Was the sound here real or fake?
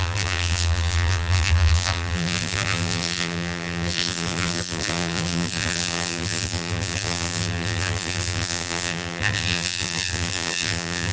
fake